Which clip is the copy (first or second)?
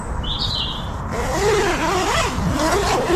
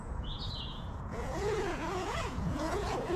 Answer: second